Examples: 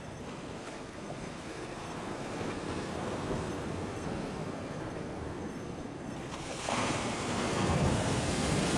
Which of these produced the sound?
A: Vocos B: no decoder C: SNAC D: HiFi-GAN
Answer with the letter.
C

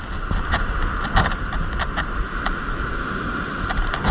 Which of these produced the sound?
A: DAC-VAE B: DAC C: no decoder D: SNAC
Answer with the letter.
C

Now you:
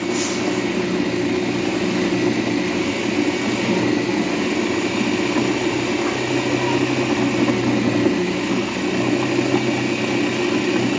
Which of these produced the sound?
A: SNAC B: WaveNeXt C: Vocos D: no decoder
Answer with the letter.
D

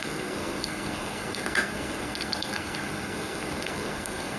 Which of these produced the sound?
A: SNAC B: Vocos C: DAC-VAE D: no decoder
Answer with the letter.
A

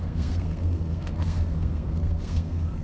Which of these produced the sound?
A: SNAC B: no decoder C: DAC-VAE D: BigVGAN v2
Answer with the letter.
A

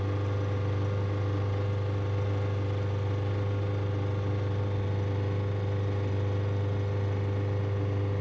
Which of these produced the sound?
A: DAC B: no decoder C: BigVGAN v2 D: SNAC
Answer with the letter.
B